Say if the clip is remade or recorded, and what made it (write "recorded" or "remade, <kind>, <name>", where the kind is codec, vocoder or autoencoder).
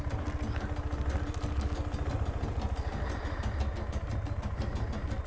recorded